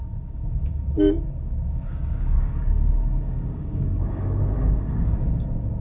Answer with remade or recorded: remade